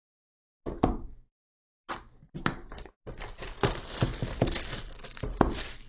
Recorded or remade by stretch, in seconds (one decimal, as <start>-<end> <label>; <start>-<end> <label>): 0.0-5.9 recorded